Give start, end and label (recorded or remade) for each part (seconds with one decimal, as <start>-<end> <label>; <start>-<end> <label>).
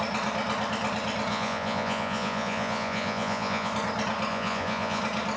0.0-1.3 recorded; 1.3-3.7 remade; 3.7-4.3 recorded; 4.3-5.0 remade; 5.0-5.4 recorded